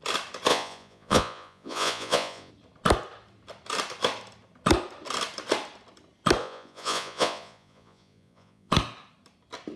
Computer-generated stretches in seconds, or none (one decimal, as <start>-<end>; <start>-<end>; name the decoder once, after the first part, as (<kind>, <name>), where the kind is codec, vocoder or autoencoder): 0.5-2.5 (vocoder, Vocos); 6.4-8.7